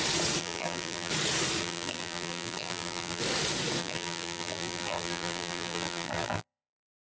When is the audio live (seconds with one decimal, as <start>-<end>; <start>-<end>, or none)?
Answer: 0.0-0.4; 1.1-1.6; 3.2-3.8